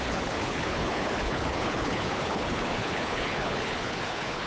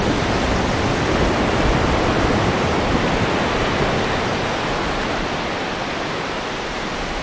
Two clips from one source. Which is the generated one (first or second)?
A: first